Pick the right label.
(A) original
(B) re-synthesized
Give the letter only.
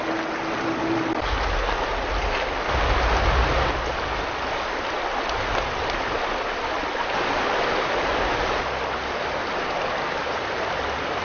A